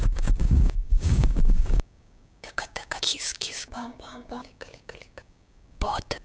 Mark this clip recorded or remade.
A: remade